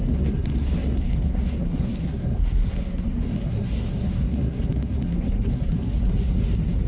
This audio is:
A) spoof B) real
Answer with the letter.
A